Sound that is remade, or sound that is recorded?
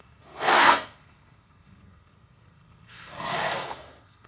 remade